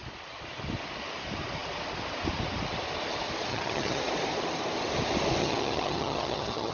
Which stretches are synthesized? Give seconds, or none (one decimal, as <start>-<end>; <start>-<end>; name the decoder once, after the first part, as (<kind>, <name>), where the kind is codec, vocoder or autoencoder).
3.5-4.0 (vocoder, HiFi-GAN); 5.4-6.7

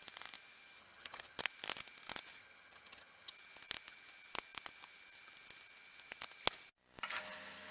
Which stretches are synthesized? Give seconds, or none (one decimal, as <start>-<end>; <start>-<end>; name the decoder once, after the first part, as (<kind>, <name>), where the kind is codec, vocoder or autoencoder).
0.8-1.4 (vocoder, HiFi-GAN); 2.4-3.3

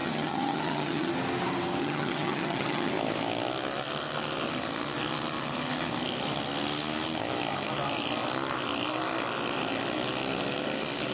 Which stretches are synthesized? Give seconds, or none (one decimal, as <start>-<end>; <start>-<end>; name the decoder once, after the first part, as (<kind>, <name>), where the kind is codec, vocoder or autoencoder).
0.0-1.1 (vocoder, HiFi-GAN); 1.8-2.9

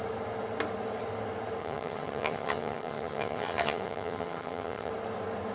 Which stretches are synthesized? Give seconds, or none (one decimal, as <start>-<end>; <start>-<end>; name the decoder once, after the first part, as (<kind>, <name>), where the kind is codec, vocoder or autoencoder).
1.6-4.9 (vocoder, HiFi-GAN)

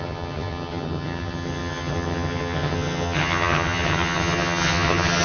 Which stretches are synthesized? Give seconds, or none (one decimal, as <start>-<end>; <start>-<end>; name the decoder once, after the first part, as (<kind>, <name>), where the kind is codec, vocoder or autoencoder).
0.0-5.2 (vocoder, HiFi-GAN)

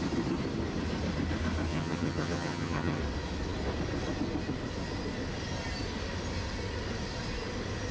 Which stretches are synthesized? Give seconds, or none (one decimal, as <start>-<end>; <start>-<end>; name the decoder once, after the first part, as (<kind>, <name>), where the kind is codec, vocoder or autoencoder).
1.7-3.0 (vocoder, HiFi-GAN)